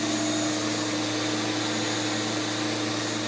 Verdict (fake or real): real